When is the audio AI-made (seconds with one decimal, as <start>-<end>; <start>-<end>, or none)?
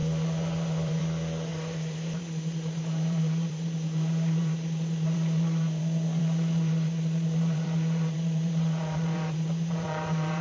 0.0-1.0; 1.5-5.8; 6.2-10.4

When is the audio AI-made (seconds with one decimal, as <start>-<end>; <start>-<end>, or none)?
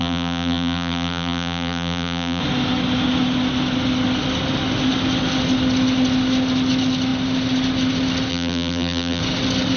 0.0-2.4; 8.3-9.2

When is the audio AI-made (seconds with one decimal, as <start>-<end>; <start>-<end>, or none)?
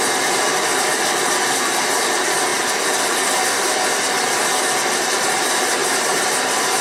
5.8-6.8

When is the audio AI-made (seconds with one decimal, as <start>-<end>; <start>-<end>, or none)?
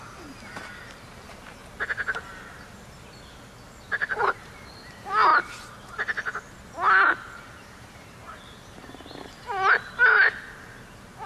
0.0-1.6; 3.5-5.3; 7.4-9.4; 10.4-11.3